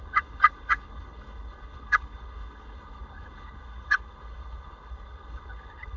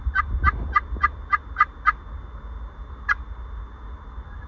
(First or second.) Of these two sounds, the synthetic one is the first